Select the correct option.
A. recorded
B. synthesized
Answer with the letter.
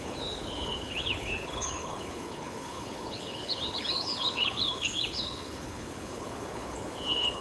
B